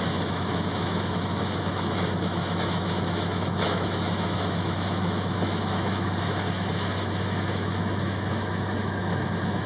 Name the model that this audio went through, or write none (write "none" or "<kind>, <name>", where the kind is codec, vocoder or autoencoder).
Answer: autoencoder, DAC-VAE